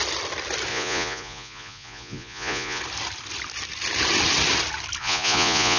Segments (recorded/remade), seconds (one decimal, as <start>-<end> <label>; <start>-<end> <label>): 0.0-0.7 recorded; 0.7-2.8 remade; 2.8-5.0 recorded; 5.0-5.8 remade